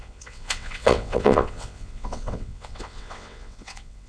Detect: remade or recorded remade